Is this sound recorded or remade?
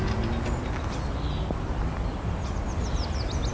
recorded